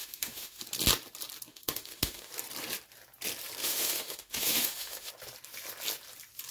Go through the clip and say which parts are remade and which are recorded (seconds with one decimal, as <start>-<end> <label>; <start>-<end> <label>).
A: 0.0-0.6 remade; 0.6-1.5 recorded; 1.5-2.3 remade; 2.3-3.6 recorded; 3.6-5.1 remade; 5.1-6.5 recorded